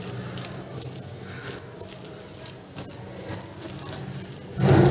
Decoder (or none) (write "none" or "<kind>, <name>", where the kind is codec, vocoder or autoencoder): none